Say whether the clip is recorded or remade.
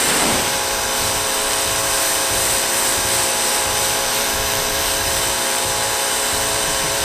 remade